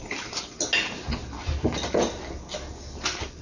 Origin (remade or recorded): recorded